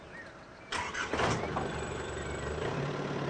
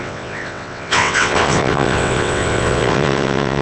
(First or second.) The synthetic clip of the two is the second